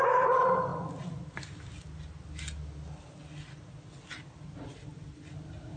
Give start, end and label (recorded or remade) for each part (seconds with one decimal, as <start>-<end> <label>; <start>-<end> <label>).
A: 0.0-5.8 recorded